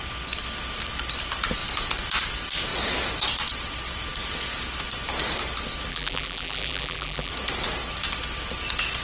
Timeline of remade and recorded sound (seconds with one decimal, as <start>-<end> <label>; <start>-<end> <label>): 0.0-5.9 recorded; 5.9-7.3 remade; 7.3-9.0 recorded